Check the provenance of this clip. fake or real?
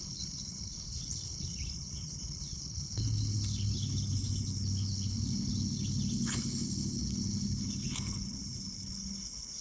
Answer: fake